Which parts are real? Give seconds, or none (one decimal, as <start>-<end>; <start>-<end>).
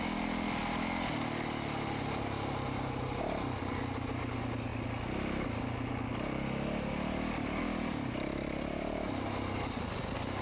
0.0-10.4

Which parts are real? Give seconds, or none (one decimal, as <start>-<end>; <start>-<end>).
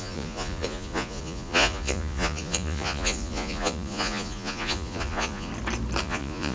5.5-6.0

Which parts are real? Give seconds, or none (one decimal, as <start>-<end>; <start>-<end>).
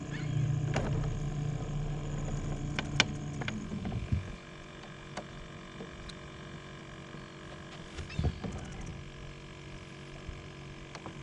0.0-3.7; 6.8-11.2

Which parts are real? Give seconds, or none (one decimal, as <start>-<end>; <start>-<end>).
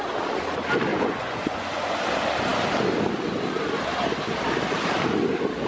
0.0-0.9; 2.0-5.7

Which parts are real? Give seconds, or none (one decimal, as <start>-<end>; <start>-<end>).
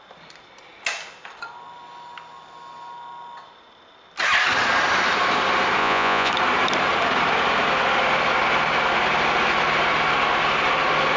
0.0-5.8; 6.3-11.2